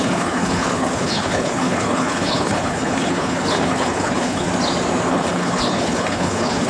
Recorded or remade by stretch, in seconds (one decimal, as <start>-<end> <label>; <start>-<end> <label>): 0.0-4.5 remade; 4.5-5.1 recorded; 5.1-6.7 remade